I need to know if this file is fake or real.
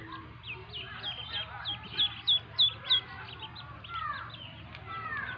real